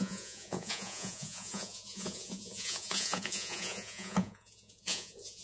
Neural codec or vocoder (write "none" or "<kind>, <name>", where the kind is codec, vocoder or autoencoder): vocoder, Vocos